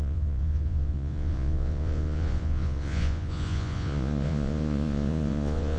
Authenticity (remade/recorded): remade